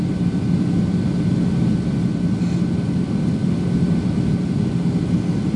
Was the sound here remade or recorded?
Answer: recorded